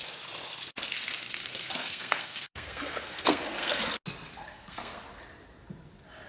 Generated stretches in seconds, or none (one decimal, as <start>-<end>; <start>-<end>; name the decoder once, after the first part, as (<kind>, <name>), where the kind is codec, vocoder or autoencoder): 1.4-3.8 (codec, SNAC); 4.4-5.0